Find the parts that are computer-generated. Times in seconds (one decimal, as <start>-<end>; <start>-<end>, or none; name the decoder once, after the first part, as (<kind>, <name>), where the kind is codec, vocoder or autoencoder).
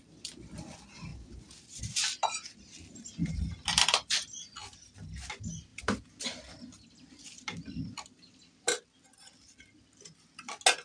1.1-1.8 (vocoder, BigVGAN v2); 4.6-5.3